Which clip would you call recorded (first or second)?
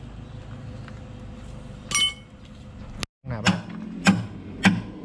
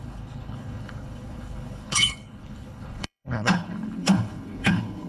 first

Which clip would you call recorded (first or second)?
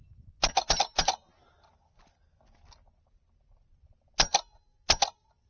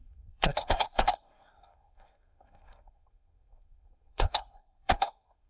first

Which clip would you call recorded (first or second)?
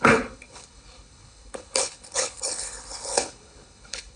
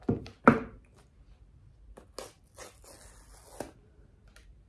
second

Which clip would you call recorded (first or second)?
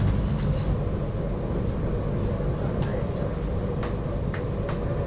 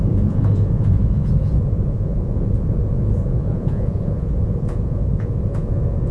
first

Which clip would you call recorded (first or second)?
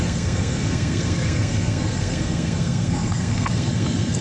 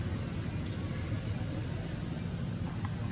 second